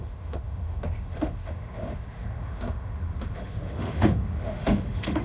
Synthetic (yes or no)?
yes